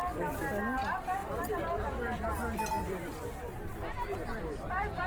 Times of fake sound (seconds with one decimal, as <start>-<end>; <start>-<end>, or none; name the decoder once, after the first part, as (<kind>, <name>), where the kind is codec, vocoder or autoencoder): 1.2-3.6 (vocoder, BigVGAN v2)